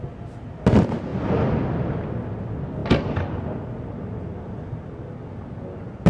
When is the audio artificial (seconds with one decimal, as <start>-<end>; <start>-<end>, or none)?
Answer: none